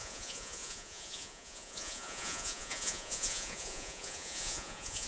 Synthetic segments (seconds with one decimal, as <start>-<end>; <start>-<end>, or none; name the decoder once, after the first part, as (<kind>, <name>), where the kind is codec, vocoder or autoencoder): 0.0-5.1 (vocoder, Vocos)